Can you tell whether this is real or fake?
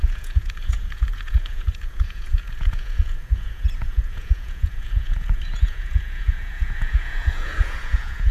fake